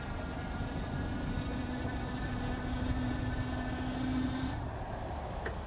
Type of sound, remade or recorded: recorded